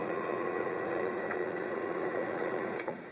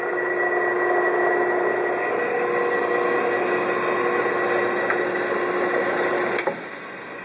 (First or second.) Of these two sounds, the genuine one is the second